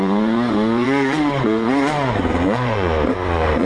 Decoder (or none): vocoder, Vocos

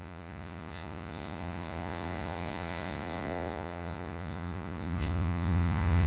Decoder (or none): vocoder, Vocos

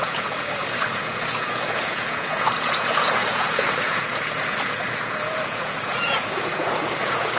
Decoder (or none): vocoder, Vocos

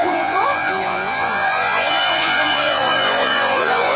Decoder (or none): vocoder, Vocos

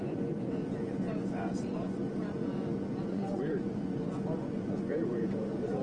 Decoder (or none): vocoder, Vocos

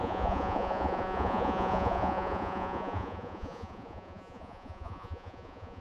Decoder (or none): vocoder, Vocos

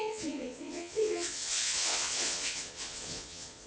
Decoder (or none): vocoder, Vocos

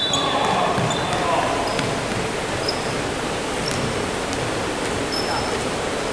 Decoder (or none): none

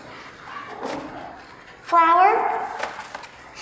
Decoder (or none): none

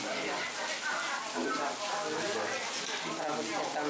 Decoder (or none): none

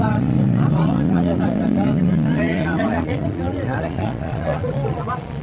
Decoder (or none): vocoder, Vocos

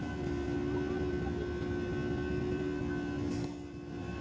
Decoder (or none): none